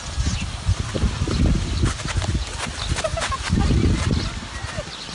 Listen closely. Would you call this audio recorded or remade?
recorded